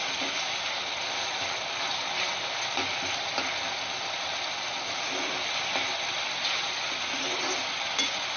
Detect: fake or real real